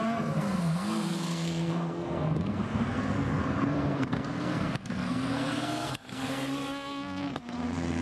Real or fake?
fake